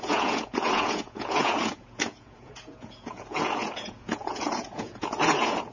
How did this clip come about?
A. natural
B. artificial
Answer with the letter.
B